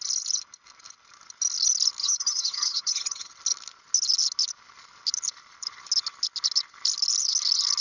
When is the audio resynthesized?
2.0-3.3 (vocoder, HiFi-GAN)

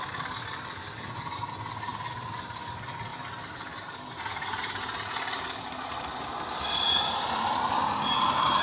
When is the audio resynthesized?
3.1-7.3 (vocoder, BigVGAN v2)

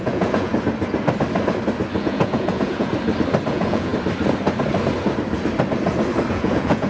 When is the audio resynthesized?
0.0-0.5 (vocoder, Vocos); 2.0-2.9; 3.5-3.9; 6.3-6.9

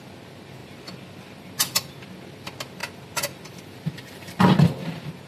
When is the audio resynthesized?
none

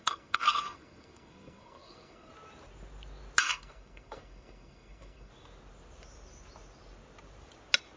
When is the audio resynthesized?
0.0-2.3 (codec, SNAC); 3.4-5.3

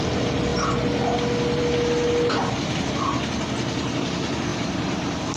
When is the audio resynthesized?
4.5-5.4 (vocoder, BigVGAN v2)